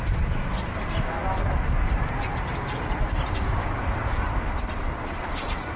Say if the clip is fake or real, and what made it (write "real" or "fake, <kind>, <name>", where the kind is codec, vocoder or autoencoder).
real